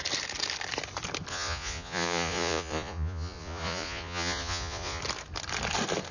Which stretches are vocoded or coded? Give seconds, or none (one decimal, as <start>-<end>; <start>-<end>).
1.3-5.0